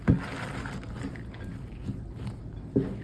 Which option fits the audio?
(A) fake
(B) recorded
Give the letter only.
B